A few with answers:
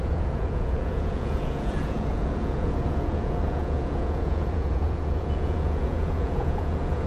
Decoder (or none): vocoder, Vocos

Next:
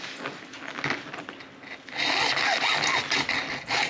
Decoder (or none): none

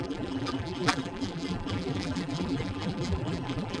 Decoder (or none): vocoder, BigVGAN v2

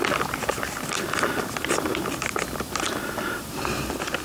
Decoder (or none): vocoder, BigVGAN v2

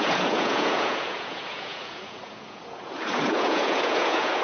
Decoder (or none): vocoder, Vocos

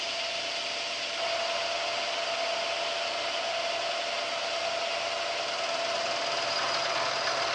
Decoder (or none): none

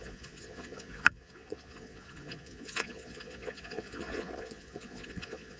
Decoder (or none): vocoder, Vocos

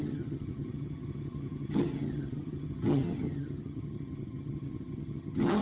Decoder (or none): vocoder, HiFi-GAN